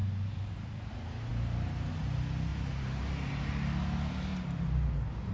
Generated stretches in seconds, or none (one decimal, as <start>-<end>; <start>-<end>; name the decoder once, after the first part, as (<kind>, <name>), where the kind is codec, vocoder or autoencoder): 0.0-0.9 (vocoder, BigVGAN v2); 2.5-3.0